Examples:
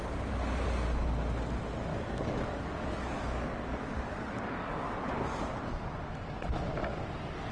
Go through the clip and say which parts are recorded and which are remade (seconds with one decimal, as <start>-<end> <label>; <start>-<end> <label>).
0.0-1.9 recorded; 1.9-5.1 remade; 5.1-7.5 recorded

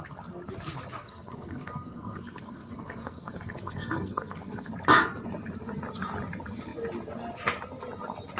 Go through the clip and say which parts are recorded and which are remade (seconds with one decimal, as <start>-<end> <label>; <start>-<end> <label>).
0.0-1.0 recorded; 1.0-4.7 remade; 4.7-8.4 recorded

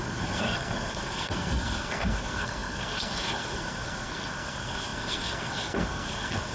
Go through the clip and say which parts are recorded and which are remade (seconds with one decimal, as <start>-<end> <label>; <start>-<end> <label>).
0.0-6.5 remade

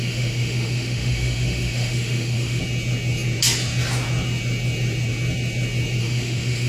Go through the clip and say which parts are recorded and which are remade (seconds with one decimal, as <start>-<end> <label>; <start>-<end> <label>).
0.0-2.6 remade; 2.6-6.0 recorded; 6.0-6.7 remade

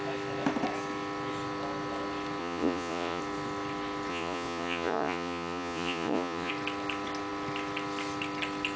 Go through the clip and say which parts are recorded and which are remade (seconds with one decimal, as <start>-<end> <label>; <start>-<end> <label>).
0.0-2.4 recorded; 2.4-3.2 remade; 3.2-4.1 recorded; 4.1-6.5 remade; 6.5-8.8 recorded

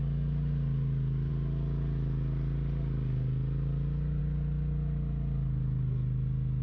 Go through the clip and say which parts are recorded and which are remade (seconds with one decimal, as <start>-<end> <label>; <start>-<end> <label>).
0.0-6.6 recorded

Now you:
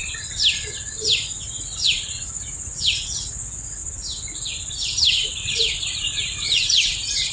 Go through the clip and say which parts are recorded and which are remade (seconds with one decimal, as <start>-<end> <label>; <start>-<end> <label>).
0.0-1.2 recorded; 1.2-3.8 remade; 3.8-5.1 recorded; 5.1-7.3 remade